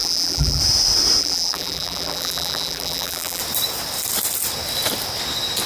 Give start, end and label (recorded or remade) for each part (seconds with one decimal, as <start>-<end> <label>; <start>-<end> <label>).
0.0-0.6 remade; 0.6-1.2 recorded; 1.2-3.4 remade; 3.4-5.7 recorded